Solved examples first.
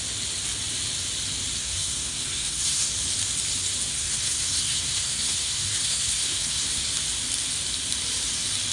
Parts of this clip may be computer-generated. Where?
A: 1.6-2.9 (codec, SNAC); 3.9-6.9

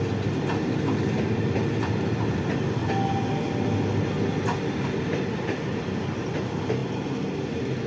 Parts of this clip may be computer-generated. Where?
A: none

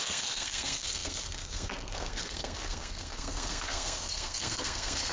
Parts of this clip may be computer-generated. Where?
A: 0.0-5.1 (codec, SNAC)

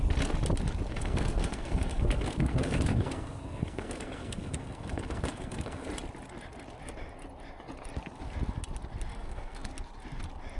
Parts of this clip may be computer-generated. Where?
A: 0.9-5.9 (codec, SNAC); 9.1-9.7

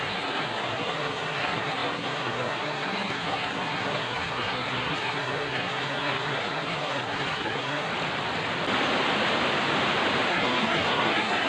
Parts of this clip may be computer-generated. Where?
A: 0.0-7.9 (codec, SNAC); 10.3-11.5

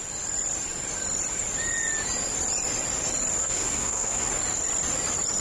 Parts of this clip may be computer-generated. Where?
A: 3.4-4.3 (codec, SNAC)

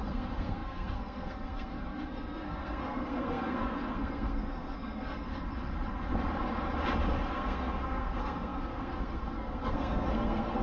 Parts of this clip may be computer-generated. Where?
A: 0.0-5.3 (codec, SNAC); 7.3-10.6

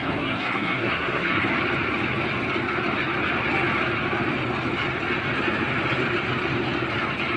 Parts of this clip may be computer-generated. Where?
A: 0.0-1.5 (codec, SNAC)